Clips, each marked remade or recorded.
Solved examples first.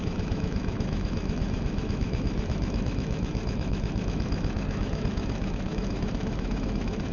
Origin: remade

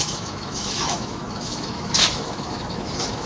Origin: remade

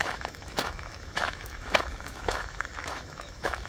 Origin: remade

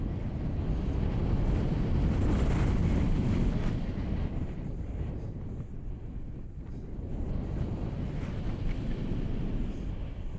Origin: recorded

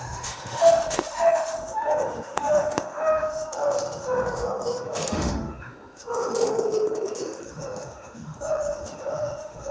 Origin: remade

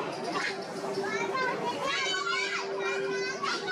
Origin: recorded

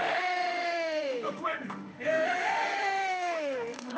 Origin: remade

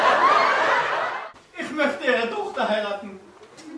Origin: recorded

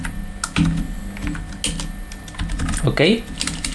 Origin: recorded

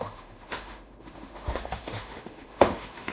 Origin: remade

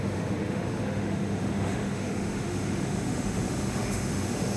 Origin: remade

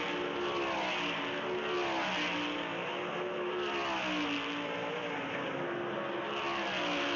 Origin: recorded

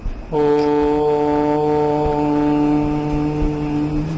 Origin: recorded